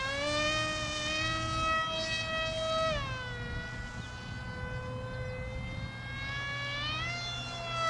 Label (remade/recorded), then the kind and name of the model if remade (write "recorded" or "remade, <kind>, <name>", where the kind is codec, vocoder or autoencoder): recorded